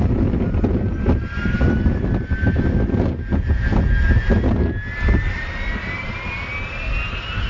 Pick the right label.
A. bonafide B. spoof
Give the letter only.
A